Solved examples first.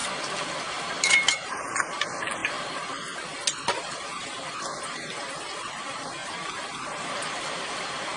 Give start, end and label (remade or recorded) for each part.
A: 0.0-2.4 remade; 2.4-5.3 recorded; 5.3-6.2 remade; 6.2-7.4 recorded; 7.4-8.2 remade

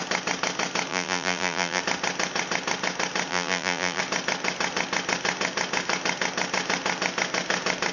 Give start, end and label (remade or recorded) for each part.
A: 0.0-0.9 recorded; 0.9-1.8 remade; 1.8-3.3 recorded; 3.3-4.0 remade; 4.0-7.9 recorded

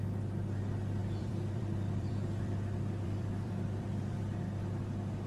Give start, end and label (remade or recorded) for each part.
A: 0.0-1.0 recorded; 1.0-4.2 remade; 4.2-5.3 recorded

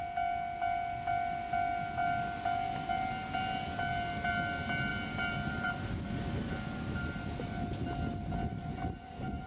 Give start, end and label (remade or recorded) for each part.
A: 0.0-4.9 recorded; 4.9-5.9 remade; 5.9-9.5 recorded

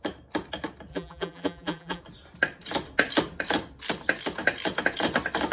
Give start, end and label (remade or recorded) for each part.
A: 0.0-0.9 recorded; 0.9-2.0 remade; 2.0-5.5 recorded

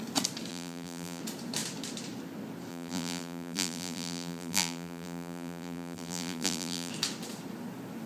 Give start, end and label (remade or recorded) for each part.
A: 0.0-0.5 recorded; 0.5-1.2 remade; 1.2-2.7 recorded; 2.7-6.9 remade; 6.9-8.1 recorded

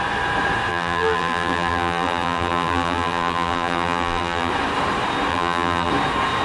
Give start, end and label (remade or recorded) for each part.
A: 0.0-0.7 recorded; 0.7-4.5 remade; 4.5-5.3 recorded; 5.3-5.9 remade; 5.9-6.4 recorded

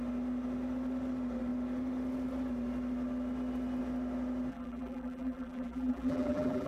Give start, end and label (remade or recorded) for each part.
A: 0.0-4.5 recorded; 4.5-6.7 remade